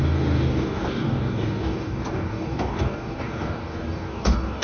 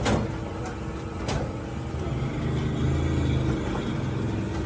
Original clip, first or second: second